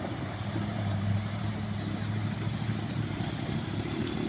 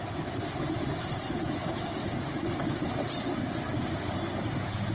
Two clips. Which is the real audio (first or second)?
second